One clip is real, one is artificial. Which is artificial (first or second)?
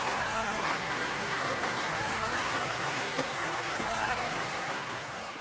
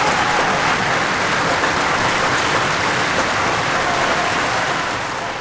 first